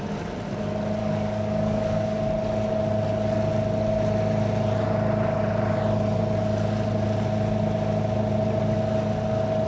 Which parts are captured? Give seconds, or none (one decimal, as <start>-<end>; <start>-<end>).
0.0-1.0; 2.3-9.7